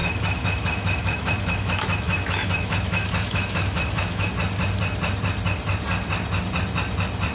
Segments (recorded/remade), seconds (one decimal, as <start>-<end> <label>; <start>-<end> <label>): 0.0-4.3 remade; 4.3-7.3 recorded